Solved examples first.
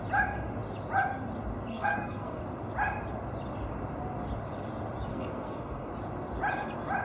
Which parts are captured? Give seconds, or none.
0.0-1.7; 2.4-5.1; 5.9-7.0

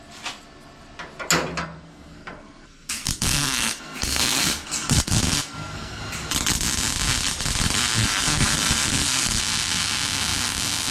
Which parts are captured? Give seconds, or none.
0.0-1.6; 6.0-8.0; 9.4-10.9

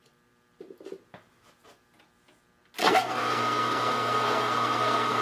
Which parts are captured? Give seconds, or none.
0.0-2.8

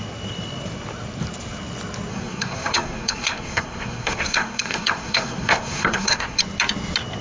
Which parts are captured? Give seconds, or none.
0.0-2.1; 6.4-7.2

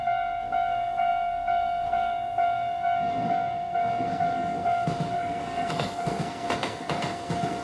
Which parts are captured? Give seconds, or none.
none